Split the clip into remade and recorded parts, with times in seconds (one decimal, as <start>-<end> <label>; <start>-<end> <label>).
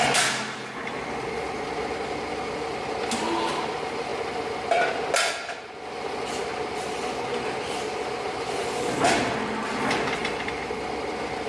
0.0-4.1 remade; 4.1-7.6 recorded; 7.6-10.2 remade; 10.2-11.1 recorded; 11.1-11.5 remade